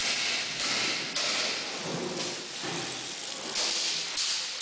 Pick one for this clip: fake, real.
real